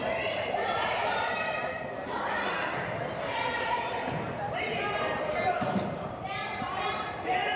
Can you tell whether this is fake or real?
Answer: fake